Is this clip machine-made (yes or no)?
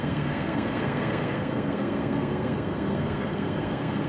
yes